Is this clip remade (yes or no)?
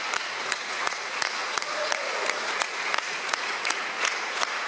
yes